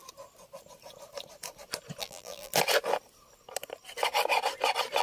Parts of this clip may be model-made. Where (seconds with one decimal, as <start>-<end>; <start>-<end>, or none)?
2.0-2.5